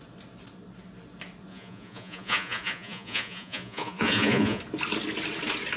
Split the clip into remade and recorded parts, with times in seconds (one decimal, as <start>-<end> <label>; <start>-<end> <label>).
0.0-1.5 recorded; 1.5-4.6 remade; 4.6-5.8 recorded